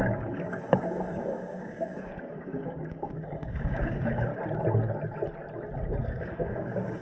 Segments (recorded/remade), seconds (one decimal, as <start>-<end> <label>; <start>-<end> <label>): 0.0-4.3 remade; 4.3-6.1 recorded; 6.1-7.0 remade